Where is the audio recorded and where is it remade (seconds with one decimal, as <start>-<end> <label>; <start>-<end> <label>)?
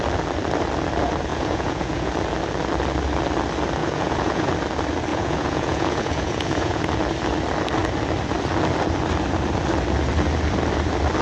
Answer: 0.0-1.3 recorded; 1.3-2.1 remade; 2.1-3.8 recorded; 3.8-4.5 remade; 4.5-5.1 recorded; 5.1-6.8 remade; 6.8-11.2 recorded